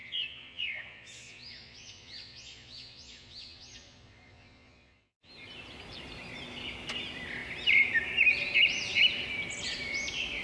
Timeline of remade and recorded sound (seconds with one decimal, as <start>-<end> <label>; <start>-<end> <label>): 0.0-5.3 remade; 5.3-10.4 recorded